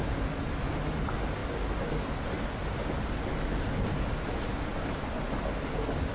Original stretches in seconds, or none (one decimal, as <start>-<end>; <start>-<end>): 0.0-4.7; 5.4-6.1